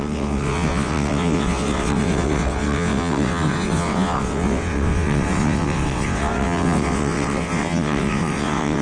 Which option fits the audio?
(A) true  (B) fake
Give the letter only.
B